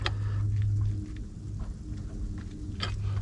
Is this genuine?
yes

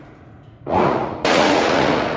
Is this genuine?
no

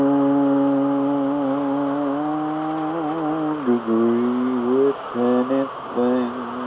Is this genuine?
yes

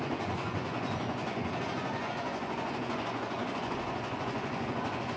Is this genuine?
no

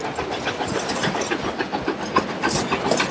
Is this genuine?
yes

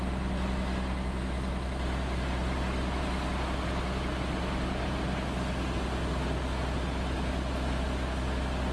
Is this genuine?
yes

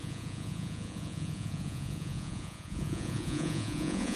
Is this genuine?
no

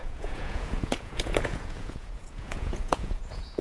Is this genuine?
no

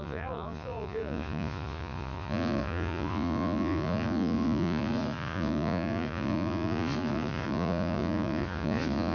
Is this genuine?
no